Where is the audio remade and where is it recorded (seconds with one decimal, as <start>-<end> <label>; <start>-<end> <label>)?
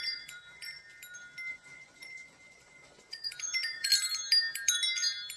0.0-0.8 remade; 0.8-1.5 recorded; 1.5-3.9 remade; 3.9-5.4 recorded